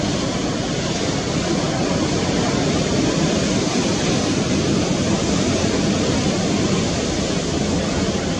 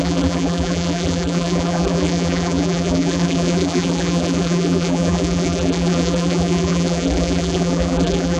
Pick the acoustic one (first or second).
first